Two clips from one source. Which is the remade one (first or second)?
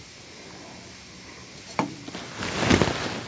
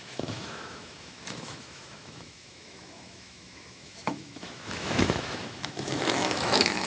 second